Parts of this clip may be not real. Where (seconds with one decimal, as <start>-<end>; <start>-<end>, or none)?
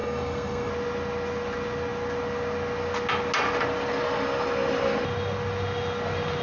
0.0-0.7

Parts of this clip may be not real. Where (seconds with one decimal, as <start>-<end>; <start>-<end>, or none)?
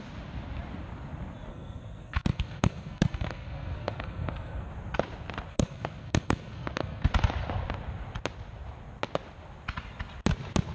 1.5-4.7; 5.5-7.1